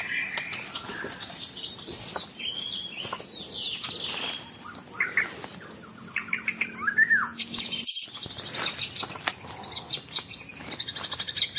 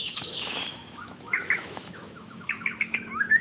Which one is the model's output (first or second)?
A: second